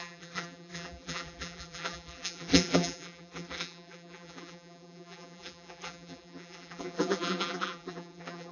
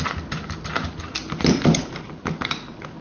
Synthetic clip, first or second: first